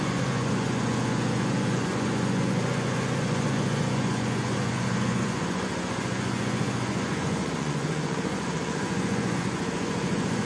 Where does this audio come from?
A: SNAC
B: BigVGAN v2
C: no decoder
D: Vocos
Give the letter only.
D